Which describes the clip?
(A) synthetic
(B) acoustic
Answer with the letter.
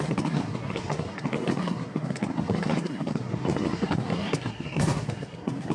A